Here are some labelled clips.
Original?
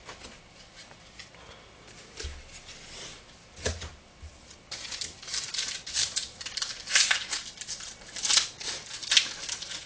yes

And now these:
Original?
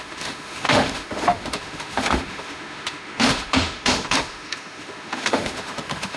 no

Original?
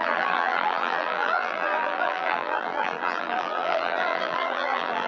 no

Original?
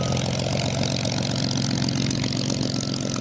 yes